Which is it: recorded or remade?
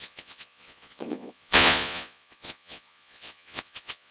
remade